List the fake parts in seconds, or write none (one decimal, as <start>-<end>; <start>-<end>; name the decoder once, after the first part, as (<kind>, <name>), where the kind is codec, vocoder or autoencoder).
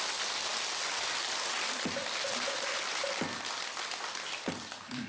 none